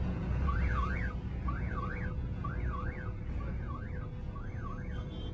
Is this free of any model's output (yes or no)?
no